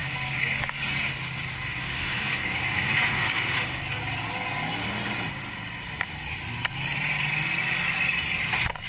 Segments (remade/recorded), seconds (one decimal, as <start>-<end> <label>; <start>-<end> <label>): 0.0-4.0 remade; 4.0-8.9 recorded